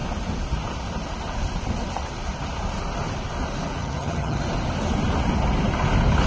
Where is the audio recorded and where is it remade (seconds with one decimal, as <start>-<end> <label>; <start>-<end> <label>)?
0.0-3.8 recorded; 3.8-4.4 remade; 4.4-6.3 recorded